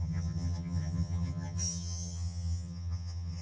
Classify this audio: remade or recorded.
remade